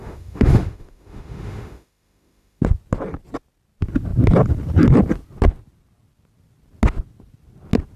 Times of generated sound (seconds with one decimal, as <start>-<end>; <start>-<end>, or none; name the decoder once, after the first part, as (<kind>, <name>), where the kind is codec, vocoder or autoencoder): 0.0-2.6 (autoencoder, DAC-VAE)